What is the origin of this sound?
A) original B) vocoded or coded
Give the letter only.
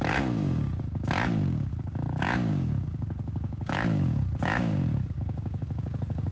B